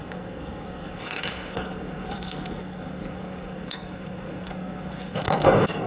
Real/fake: fake